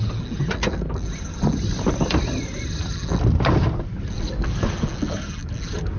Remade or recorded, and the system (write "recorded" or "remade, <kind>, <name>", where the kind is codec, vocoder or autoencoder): recorded